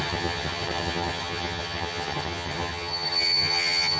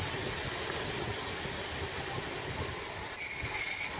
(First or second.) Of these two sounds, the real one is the second